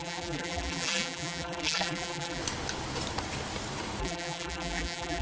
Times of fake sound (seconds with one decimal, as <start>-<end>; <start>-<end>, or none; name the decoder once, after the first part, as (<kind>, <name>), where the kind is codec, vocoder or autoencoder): 0.0-2.4 (vocoder, BigVGAN v2); 4.0-5.2